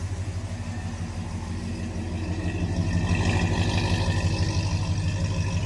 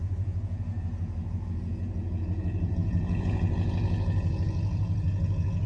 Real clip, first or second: first